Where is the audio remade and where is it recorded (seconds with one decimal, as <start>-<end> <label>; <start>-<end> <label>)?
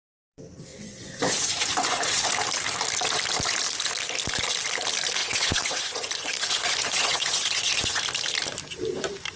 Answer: 0.0-0.7 recorded; 0.7-2.3 remade; 2.3-5.2 recorded; 5.2-8.0 remade; 8.0-9.4 recorded